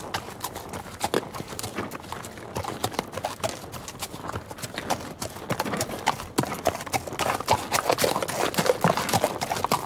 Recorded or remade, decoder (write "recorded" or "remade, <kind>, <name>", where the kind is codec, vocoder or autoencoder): recorded